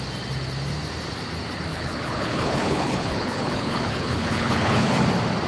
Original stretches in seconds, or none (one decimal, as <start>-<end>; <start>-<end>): 0.0-1.7; 5.0-5.5